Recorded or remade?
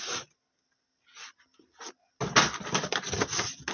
recorded